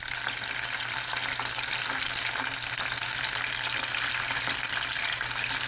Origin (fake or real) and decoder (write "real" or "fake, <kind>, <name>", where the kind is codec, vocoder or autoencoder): real